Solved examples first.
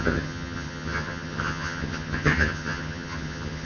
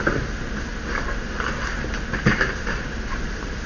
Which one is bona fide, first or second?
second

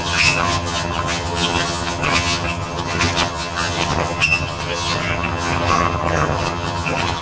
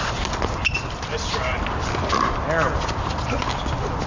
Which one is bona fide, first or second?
second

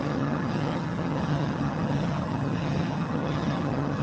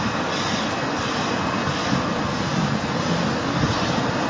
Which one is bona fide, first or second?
second